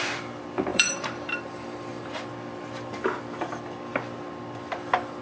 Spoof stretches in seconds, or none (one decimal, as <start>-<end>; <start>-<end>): 0.7-2.3